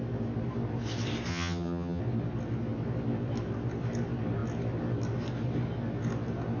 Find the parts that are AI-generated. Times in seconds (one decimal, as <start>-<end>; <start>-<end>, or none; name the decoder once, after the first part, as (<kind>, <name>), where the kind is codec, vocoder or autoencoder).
1.3-2.0 (vocoder, HiFi-GAN)